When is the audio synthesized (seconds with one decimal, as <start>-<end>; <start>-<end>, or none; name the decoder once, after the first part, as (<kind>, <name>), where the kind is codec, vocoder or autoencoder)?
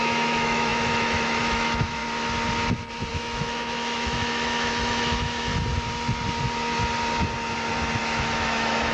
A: 0.0-2.0 (autoencoder, DAC-VAE); 3.1-5.5; 8.0-8.9